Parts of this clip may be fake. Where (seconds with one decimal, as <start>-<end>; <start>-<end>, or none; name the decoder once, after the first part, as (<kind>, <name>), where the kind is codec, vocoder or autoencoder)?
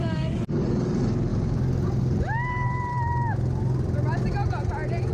0.0-1.3 (codec, DAC); 2.5-2.9